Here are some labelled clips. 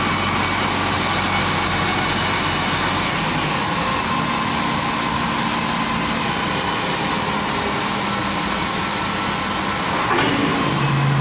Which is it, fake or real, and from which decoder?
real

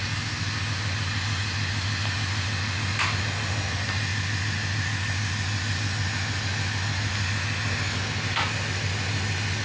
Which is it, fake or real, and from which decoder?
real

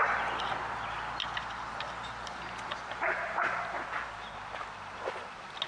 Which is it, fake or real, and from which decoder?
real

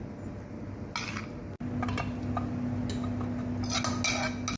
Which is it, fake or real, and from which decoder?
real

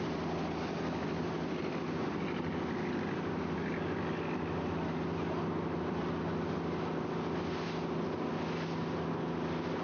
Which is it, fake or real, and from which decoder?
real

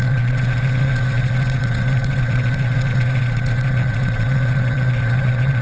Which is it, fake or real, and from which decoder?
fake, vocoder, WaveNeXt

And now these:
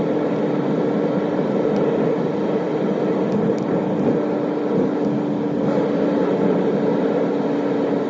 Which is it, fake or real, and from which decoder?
real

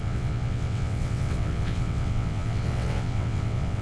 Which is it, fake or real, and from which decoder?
fake, vocoder, WaveNeXt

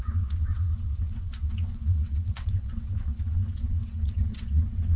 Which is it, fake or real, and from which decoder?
fake, vocoder, WaveNeXt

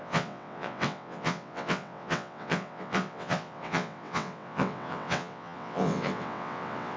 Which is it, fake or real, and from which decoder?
fake, vocoder, WaveNeXt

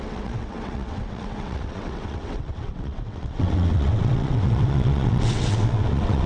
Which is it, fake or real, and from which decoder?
fake, vocoder, WaveNeXt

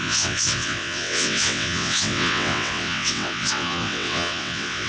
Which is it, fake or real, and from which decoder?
fake, vocoder, WaveNeXt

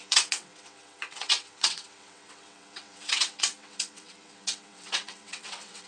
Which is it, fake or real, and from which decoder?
fake, vocoder, WaveNeXt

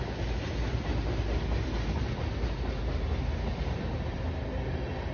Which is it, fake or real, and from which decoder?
real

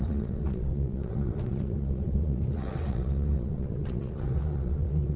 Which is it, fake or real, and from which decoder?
fake, vocoder, WaveNeXt